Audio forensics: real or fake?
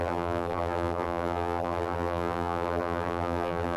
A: fake